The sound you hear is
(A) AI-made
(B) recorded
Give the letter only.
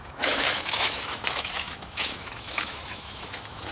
A